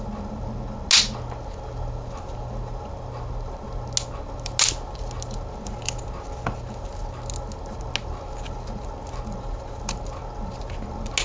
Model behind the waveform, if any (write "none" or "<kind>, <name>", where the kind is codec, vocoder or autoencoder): none